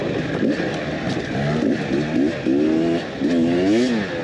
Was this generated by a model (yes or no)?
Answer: no